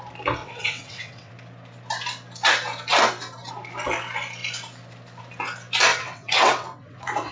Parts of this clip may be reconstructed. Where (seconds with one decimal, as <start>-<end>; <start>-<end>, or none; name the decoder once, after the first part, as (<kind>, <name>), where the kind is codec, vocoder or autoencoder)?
0.4-1.3 (vocoder, WaveNeXt); 5.9-7.3